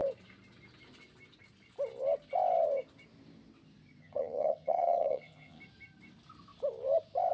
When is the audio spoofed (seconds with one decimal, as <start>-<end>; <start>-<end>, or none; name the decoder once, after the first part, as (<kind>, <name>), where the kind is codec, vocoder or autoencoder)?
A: 4.0-5.6 (vocoder, HiFi-GAN)